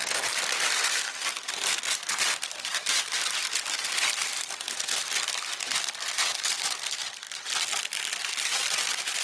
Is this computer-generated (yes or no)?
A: no